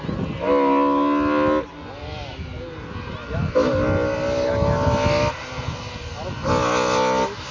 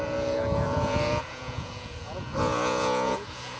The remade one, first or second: second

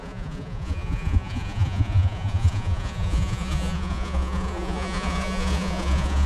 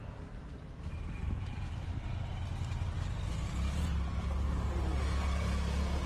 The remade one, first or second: first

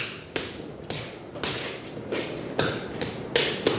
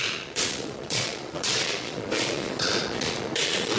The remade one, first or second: second